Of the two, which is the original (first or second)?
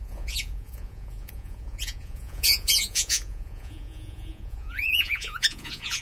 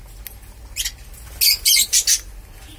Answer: second